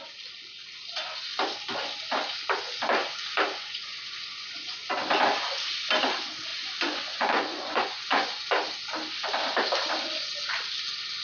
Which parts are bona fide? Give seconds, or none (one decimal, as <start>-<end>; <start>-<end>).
0.0-3.6; 4.9-6.5; 8.5-11.2